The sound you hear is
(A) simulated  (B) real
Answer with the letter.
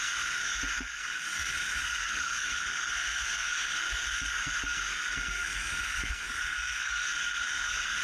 A